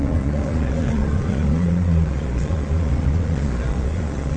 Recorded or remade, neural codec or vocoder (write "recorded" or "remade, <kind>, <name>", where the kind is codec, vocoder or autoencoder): remade, vocoder, Vocos